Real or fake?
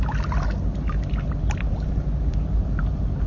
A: real